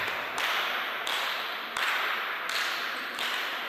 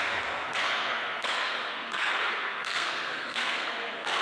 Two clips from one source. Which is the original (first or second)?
first